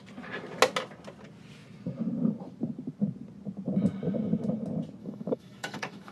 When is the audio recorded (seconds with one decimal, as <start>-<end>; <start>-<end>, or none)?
0.0-5.0